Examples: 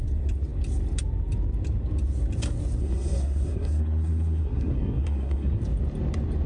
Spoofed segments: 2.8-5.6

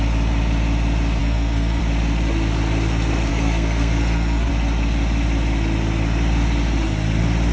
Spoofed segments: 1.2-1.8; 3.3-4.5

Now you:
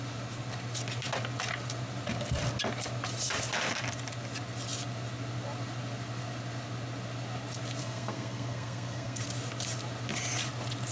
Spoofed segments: 7.8-9.2